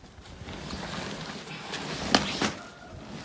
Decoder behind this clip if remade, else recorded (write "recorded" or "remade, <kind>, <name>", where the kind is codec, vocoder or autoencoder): recorded